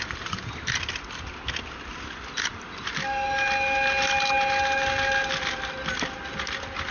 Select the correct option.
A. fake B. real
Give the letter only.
B